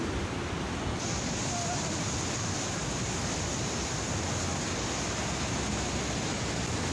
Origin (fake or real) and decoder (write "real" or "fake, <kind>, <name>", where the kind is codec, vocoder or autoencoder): real